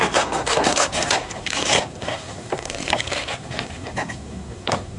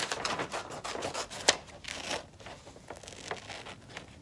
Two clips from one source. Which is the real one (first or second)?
second